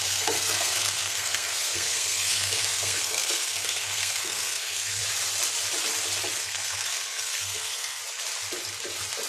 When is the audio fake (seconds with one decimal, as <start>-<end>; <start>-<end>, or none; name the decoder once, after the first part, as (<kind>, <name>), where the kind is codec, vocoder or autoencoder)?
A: 0.0-5.0 (codec, SNAC); 6.4-8.0